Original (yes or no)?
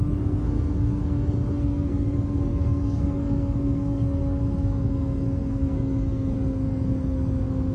no